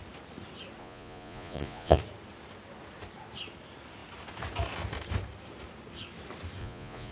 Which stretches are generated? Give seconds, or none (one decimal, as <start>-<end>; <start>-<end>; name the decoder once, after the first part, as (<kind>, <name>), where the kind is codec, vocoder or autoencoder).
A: 0.8-2.0 (vocoder, Vocos); 6.6-7.1